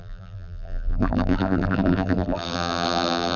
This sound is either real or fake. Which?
fake